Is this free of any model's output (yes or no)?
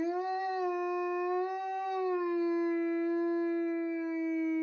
yes